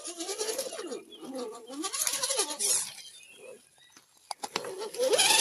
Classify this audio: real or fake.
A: real